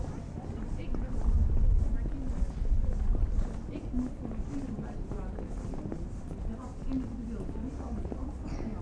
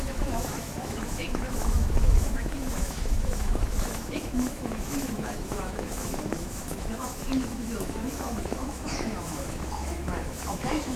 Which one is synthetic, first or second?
second